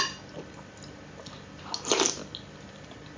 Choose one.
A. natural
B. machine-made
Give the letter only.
A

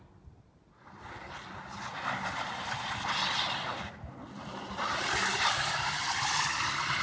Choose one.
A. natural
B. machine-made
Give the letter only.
A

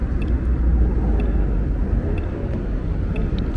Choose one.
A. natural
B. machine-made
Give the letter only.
A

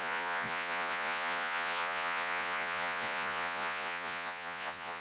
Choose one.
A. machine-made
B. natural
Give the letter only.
A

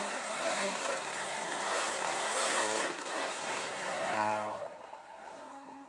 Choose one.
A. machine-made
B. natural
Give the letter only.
A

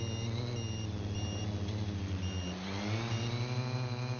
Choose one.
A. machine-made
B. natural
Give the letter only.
B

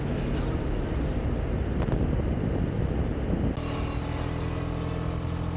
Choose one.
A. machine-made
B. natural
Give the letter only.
B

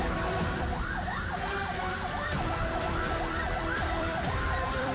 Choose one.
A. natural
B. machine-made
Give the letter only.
B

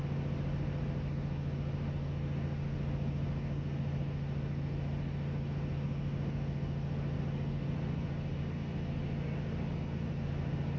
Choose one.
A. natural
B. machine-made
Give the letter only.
A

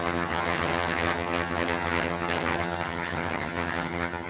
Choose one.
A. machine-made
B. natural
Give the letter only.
A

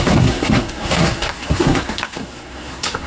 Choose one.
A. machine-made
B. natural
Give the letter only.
A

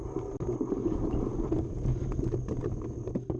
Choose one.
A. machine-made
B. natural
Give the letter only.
B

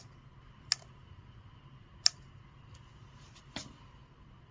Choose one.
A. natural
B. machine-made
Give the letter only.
A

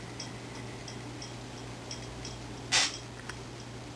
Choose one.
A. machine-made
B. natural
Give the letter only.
B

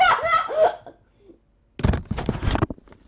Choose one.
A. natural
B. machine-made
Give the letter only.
A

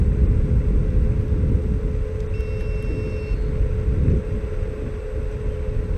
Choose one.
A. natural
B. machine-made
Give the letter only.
A